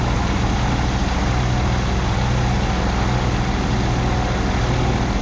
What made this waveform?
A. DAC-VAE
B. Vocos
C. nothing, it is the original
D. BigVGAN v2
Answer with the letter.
C